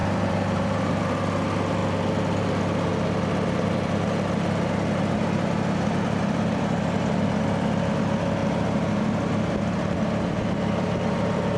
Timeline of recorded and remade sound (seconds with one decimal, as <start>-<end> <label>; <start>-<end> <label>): 0.0-1.2 remade; 1.2-8.4 recorded; 8.4-8.9 remade; 8.9-11.6 recorded